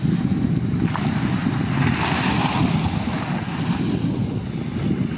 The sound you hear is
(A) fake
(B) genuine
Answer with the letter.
B